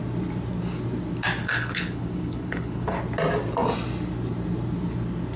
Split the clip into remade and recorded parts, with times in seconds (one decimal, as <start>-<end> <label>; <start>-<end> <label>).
0.0-1.4 recorded; 1.4-3.0 remade; 3.0-5.4 recorded